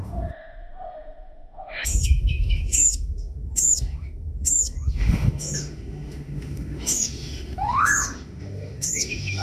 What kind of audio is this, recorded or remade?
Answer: remade